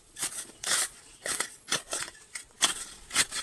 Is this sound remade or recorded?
remade